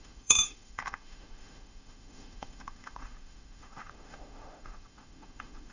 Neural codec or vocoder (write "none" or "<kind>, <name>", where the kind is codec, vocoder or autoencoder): autoencoder, DAC-VAE